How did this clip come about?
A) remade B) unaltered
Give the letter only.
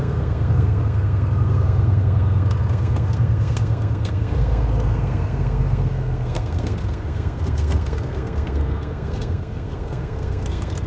A